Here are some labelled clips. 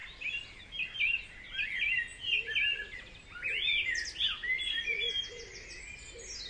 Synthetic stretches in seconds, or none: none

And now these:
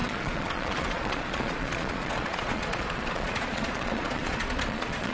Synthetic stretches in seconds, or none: 0.0-5.1 (vocoder, Vocos)

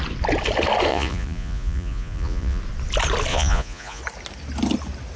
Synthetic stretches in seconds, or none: 0.9-2.6 (vocoder, Vocos); 3.3-4.0

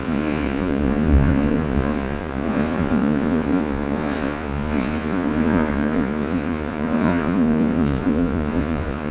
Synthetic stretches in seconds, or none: 0.0-9.1 (vocoder, Vocos)